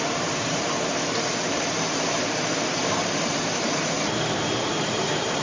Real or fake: fake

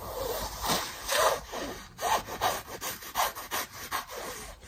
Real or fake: fake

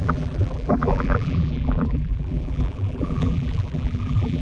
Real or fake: fake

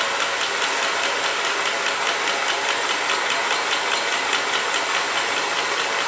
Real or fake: real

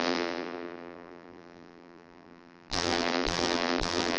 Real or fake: fake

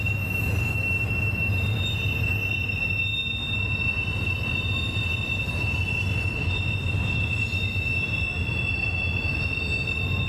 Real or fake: real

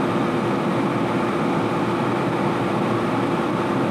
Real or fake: real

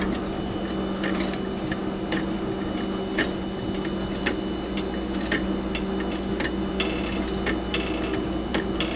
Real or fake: real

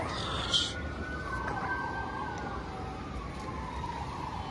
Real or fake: real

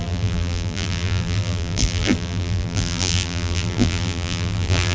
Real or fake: fake